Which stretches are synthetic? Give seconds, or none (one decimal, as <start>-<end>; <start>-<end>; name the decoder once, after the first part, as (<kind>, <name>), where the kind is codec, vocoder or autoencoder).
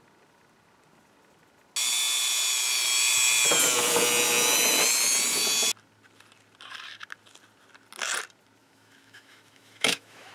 8.6-10.3 (autoencoder, DAC-VAE)